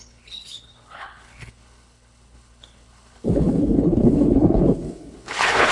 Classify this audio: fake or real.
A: fake